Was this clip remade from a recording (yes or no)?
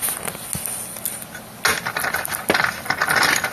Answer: no